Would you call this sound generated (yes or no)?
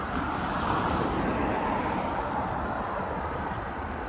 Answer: no